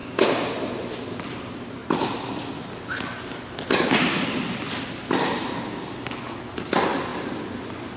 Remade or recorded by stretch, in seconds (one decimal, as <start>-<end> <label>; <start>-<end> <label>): 0.0-0.5 remade; 0.5-8.0 recorded